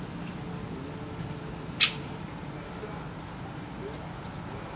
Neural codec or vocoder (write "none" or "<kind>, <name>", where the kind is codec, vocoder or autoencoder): none